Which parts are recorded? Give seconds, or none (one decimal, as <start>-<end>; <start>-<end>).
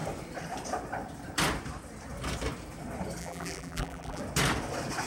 0.0-3.2; 4.2-5.1